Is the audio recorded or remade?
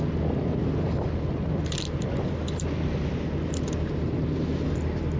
recorded